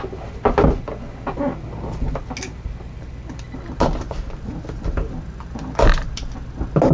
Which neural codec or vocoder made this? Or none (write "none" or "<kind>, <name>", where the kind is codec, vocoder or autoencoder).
none